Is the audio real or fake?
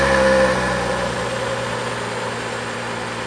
real